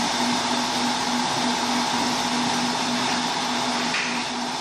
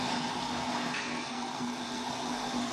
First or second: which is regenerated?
second